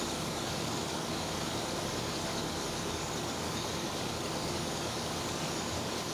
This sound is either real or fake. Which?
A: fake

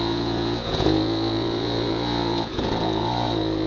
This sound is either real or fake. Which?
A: fake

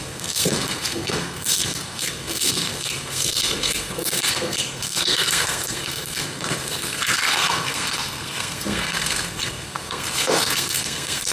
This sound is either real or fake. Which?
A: fake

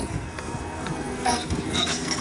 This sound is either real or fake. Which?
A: fake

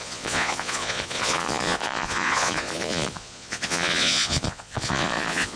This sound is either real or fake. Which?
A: fake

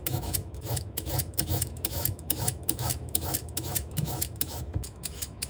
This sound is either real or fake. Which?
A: fake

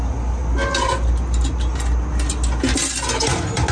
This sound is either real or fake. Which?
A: real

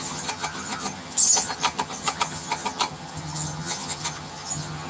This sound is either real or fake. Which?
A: fake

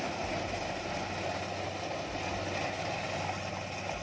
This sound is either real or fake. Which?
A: real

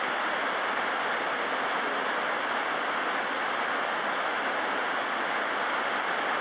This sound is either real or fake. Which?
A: real